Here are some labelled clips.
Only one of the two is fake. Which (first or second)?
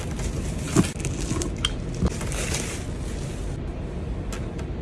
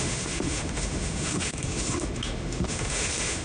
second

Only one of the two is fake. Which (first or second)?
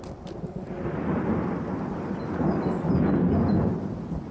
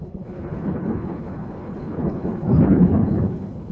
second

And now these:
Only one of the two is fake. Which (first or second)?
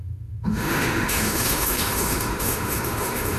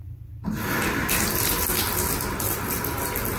first